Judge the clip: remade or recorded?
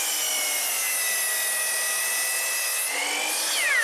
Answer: recorded